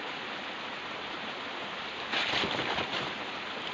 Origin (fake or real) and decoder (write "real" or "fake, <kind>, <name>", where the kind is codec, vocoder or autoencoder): real